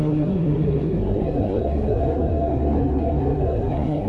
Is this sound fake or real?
fake